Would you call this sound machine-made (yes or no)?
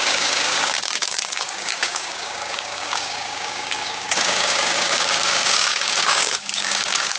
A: yes